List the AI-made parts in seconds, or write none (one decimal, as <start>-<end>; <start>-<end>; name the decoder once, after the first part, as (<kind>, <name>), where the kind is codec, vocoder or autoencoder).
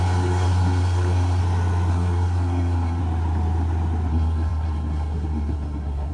0.0-1.4 (codec, SNAC); 1.9-3.0; 4.1-6.1